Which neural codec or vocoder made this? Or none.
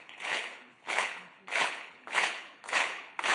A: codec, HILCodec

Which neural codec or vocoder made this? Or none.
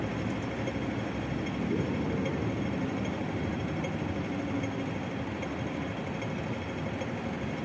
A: none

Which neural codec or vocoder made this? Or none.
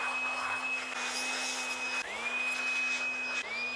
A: none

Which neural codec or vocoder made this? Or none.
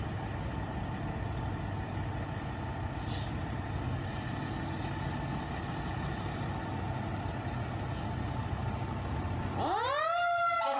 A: none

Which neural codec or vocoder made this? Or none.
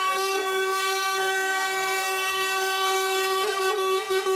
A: codec, SNAC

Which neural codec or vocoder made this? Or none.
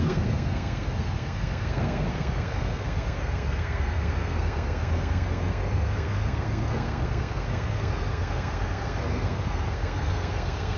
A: codec, SNAC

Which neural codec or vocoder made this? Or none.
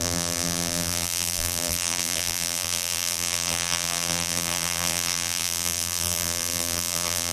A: vocoder, BigVGAN v2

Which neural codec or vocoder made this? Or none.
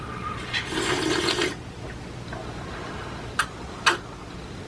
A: none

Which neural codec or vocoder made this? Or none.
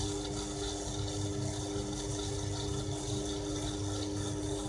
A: none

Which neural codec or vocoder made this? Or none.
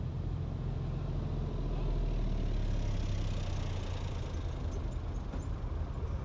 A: none